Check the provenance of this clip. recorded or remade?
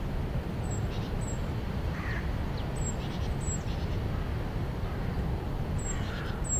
recorded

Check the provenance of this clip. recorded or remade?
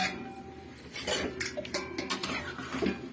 recorded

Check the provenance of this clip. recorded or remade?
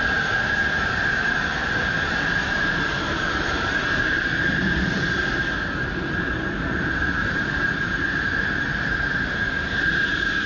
remade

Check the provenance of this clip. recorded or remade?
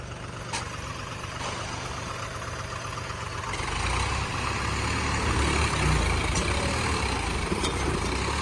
recorded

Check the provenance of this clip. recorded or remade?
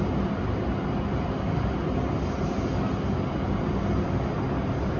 recorded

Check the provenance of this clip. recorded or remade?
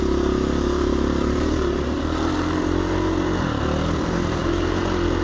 remade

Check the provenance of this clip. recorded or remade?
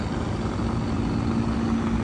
recorded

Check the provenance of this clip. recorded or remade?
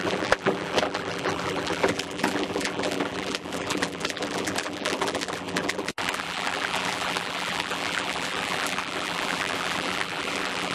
remade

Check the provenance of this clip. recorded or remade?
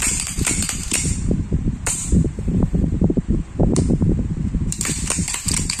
remade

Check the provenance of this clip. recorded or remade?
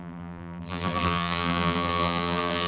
remade